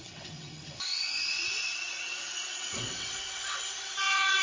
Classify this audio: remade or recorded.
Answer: remade